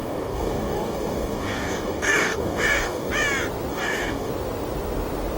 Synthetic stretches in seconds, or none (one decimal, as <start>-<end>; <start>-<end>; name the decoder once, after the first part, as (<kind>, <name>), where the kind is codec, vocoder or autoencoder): 0.0-3.1 (codec, DAC); 3.7-4.3